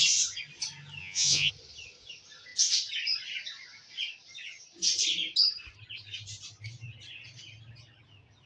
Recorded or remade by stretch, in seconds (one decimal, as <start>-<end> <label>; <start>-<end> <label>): 0.0-1.0 recorded; 1.0-1.5 remade; 1.5-8.5 recorded